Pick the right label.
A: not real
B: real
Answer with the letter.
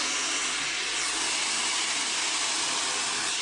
B